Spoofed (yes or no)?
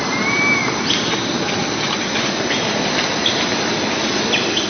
no